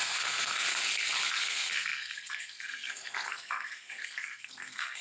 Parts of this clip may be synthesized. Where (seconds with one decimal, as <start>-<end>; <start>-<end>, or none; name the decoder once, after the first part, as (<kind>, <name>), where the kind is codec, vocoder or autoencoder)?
0.0-0.8 (codec, SNAC); 1.4-5.0